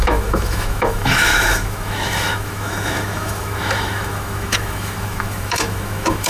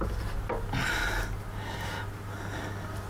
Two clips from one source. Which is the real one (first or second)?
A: second